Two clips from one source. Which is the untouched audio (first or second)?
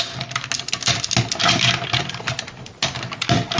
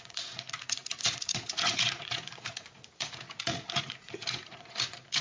first